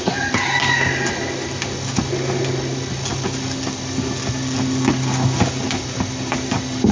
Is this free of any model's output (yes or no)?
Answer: yes